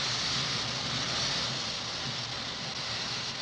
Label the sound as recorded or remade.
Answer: recorded